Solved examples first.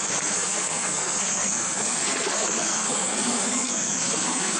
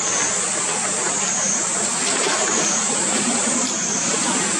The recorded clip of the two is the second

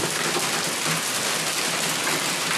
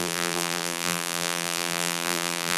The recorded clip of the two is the first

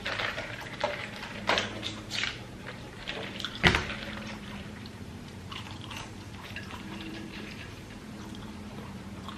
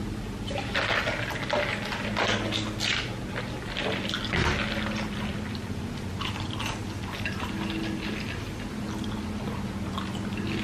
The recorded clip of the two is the second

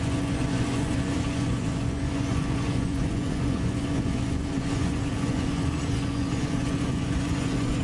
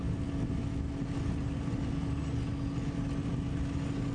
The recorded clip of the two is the second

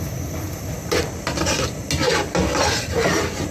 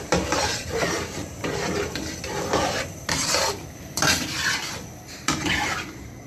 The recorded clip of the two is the first